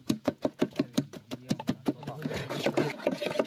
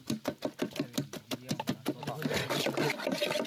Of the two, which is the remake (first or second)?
first